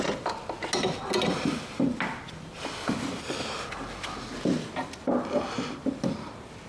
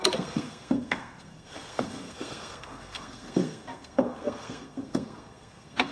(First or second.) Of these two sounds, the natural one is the first